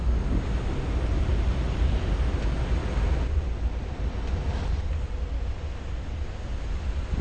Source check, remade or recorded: recorded